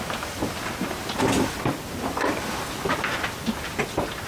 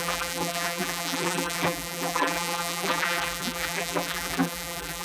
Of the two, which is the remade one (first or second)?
second